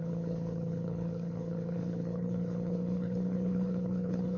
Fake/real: fake